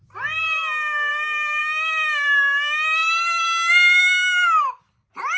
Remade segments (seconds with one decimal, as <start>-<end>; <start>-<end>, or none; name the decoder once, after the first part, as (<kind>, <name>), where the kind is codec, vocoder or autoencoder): none